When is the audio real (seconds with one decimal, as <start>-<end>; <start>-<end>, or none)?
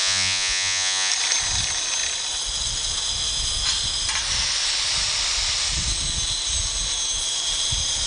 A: 1.1-8.1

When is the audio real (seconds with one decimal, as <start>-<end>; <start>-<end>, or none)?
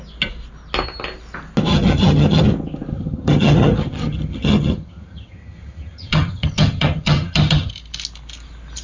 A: 0.0-1.7; 2.4-2.9; 7.7-8.8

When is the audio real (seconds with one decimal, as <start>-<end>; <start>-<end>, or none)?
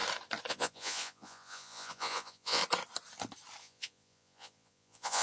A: 0.0-0.5; 2.6-3.6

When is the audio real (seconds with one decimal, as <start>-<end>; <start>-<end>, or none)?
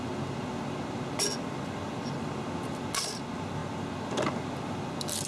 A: 0.0-5.3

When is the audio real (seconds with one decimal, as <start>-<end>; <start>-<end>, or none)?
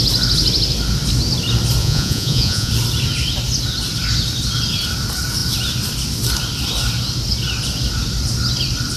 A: 0.0-1.8; 2.7-9.0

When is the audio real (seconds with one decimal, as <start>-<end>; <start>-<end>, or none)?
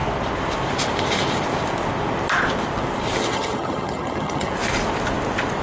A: 0.0-3.2; 4.5-5.6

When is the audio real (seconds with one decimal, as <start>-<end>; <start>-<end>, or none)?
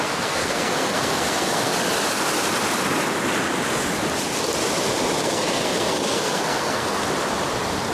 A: 1.7-5.2; 7.0-7.9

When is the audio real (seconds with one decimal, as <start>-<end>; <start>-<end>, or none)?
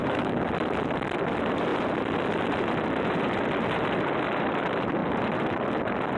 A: 0.5-6.2